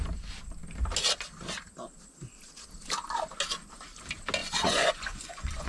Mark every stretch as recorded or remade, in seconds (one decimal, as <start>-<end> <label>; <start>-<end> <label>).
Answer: 0.0-4.4 recorded; 4.4-5.7 remade